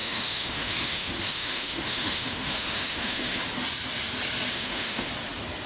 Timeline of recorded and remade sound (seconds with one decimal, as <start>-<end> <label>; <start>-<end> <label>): 0.0-3.4 remade; 3.4-4.5 recorded; 4.5-5.1 remade; 5.1-5.7 recorded